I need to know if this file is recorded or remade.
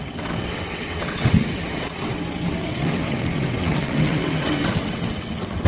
remade